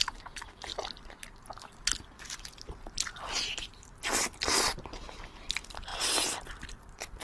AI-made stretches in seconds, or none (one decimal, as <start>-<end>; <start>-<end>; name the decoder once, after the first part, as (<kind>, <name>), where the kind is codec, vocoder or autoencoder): none

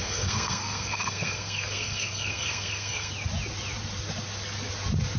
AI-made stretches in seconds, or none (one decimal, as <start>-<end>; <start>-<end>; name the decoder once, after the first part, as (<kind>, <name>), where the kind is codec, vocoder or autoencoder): 0.0-3.1 (codec, SNAC)

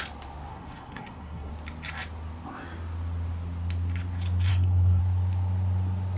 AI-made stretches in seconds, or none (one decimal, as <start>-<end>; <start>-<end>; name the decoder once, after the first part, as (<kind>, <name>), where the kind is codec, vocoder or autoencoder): 0.5-1.5 (codec, SNAC); 4.5-5.0

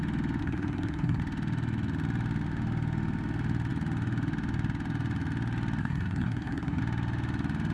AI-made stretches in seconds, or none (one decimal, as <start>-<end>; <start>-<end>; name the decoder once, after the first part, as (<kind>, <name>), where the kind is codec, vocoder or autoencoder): 0.4-1.2 (codec, SNAC); 5.8-6.8